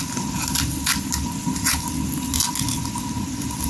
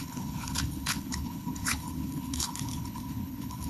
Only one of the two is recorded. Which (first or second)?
first